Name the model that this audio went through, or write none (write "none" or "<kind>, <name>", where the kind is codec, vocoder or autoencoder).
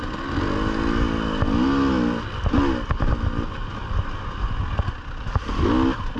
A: none